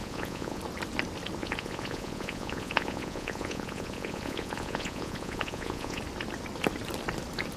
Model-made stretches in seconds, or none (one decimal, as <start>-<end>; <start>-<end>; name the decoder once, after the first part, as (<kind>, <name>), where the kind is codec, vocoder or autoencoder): 0.0-0.6 (vocoder, Vocos); 1.4-6.0